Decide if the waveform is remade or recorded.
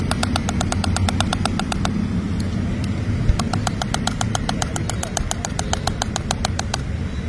recorded